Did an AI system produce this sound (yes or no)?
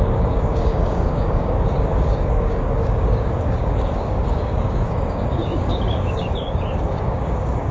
yes